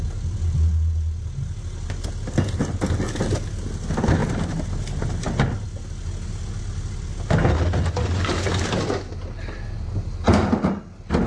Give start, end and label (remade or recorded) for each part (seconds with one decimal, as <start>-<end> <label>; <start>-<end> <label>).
0.0-11.3 recorded